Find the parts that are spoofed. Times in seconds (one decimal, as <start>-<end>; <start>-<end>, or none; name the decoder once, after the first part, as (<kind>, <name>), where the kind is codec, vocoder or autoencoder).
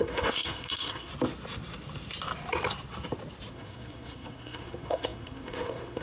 0.0-1.1 (codec, SNAC); 3.5-6.0